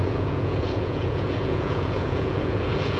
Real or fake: fake